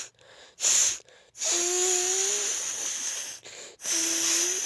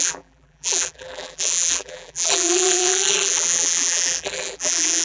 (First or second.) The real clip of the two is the first